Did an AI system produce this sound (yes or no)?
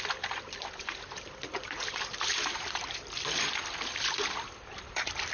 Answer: yes